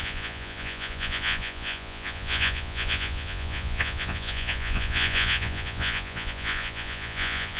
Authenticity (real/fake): fake